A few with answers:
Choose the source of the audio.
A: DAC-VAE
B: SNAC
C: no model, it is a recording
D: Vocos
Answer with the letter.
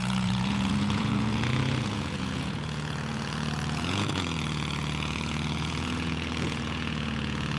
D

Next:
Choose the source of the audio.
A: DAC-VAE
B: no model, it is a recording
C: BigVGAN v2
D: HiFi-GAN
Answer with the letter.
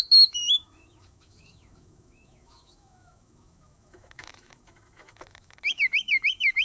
A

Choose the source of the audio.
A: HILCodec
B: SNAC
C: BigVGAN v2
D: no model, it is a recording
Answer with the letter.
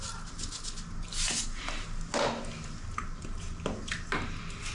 D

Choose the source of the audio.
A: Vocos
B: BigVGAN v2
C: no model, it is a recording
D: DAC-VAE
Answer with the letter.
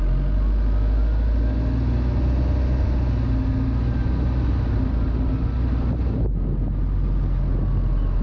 C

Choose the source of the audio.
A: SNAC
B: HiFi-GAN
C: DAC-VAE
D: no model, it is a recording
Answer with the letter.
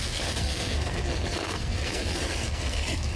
A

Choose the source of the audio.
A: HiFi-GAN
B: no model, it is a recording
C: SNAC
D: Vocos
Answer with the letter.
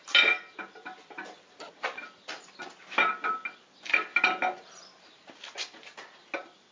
B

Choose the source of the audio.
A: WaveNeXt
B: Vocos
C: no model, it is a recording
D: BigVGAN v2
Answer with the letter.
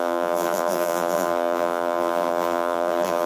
D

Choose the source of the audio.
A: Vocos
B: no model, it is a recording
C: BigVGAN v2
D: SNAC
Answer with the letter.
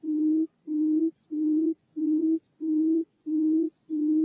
A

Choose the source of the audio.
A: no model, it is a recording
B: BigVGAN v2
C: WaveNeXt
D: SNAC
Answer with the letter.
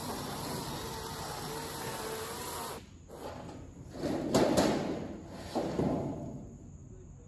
A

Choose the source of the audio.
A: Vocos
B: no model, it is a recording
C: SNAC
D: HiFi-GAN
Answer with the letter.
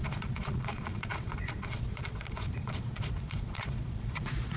A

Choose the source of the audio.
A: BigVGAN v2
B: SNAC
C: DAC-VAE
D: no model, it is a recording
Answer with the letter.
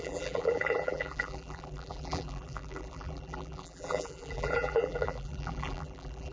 A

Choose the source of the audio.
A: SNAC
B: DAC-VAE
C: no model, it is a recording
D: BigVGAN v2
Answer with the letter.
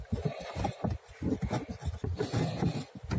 C